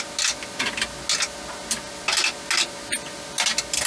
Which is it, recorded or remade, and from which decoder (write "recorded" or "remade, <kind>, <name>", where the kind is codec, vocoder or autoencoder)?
recorded